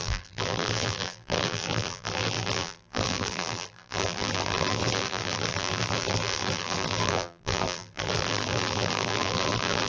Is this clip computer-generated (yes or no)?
yes